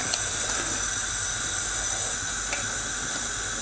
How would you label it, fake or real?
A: real